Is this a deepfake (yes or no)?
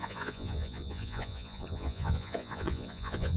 yes